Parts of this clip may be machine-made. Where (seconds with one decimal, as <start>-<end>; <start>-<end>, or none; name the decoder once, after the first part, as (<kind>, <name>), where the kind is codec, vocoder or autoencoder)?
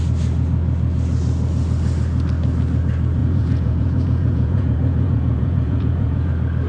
3.2-6.3 (vocoder, Vocos)